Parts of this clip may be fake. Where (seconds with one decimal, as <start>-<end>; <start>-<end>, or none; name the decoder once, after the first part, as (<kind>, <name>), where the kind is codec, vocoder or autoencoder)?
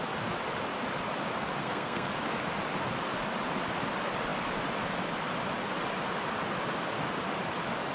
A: 1.6-2.1 (codec, SNAC)